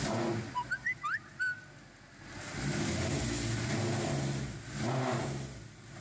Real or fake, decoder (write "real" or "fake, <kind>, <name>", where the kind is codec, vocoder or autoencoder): real